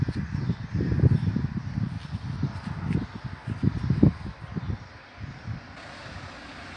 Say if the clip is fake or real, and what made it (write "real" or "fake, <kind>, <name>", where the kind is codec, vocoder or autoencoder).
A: real